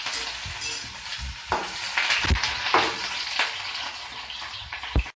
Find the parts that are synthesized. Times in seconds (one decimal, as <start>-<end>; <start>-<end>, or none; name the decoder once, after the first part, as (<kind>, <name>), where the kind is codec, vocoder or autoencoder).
none